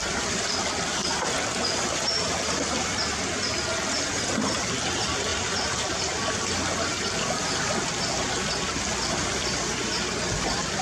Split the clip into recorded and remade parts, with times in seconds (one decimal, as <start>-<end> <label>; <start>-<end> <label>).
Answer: 0.0-5.3 recorded; 5.3-7.5 remade; 7.5-10.8 recorded